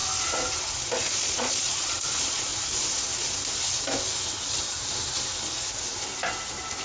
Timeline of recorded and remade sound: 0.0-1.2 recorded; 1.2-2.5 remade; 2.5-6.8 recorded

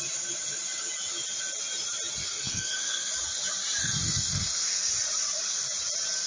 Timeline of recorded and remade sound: 0.0-2.2 recorded; 2.2-3.1 remade; 3.1-3.8 recorded; 3.8-4.9 remade; 4.9-6.3 recorded

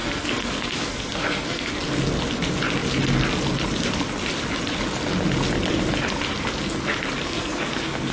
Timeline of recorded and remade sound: 0.0-1.7 remade; 1.7-7.2 recorded; 7.2-8.1 remade

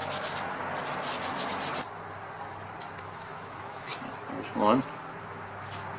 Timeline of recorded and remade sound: 0.0-3.0 recorded; 3.0-3.9 remade; 3.9-6.0 recorded